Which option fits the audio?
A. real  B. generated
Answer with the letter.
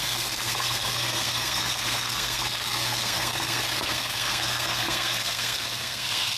B